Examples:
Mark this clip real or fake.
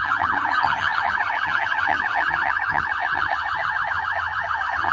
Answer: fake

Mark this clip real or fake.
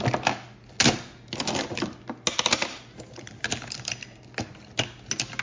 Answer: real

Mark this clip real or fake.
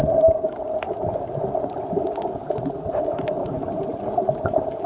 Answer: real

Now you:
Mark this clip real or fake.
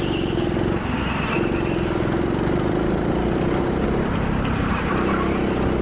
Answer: real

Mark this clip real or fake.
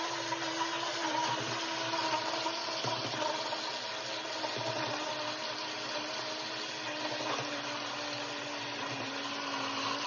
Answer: real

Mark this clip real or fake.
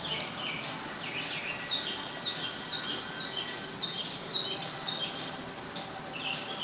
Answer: real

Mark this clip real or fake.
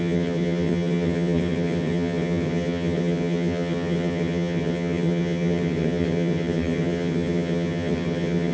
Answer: fake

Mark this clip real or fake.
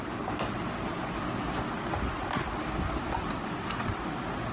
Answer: real